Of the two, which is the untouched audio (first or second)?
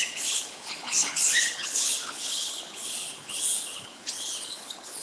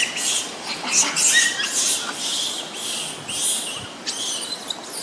second